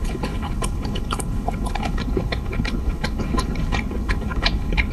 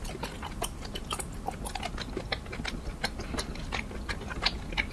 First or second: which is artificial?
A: first